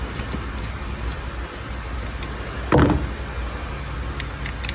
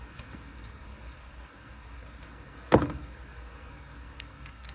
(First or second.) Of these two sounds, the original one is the first